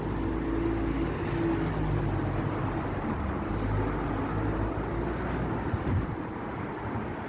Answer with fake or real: real